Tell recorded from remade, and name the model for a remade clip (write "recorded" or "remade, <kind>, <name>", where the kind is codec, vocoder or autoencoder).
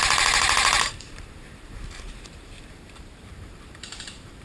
remade, vocoder, BigVGAN v2